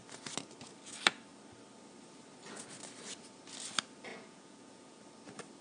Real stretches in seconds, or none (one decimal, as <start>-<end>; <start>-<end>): 0.0-4.1; 5.0-5.6